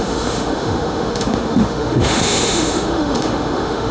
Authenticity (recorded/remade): remade